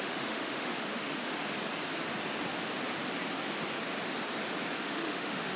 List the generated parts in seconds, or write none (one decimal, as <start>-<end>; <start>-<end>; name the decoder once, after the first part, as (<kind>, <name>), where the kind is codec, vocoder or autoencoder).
0.0-1.4 (autoencoder, DAC-VAE); 4.8-5.6

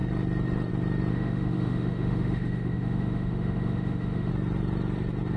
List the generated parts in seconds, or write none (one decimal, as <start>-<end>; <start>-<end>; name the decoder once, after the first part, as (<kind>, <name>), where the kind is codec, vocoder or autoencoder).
1.1-4.3 (autoencoder, DAC-VAE)

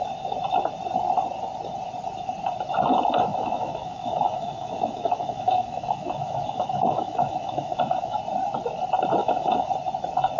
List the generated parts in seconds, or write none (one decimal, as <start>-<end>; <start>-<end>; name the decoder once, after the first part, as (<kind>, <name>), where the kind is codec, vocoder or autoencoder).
3.3-8.2 (autoencoder, DAC-VAE); 9.2-9.7